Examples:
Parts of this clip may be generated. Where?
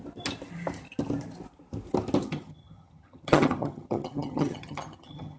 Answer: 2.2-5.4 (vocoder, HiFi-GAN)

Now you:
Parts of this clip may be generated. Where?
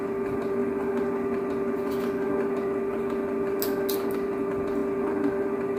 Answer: none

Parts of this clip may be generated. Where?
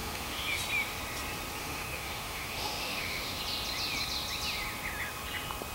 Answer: 0.0-0.6 (autoencoder, DAC-VAE); 1.6-3.4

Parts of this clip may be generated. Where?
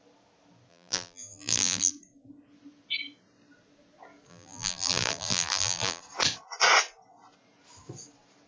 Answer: 0.7-1.9 (vocoder, BigVGAN v2); 4.3-6.0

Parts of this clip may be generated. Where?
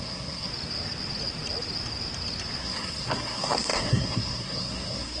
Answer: 0.0-0.5 (codec, SNAC); 2.6-5.2